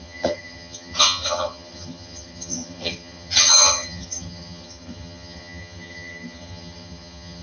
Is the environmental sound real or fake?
fake